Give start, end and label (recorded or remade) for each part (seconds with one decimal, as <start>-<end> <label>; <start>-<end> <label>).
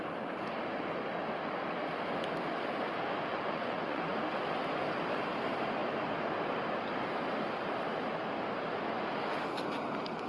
0.0-3.3 recorded; 3.3-4.2 remade; 4.2-10.3 recorded